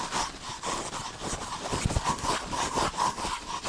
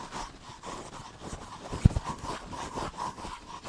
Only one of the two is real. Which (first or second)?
second